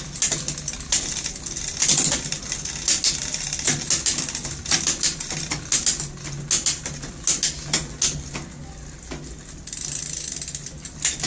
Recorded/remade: recorded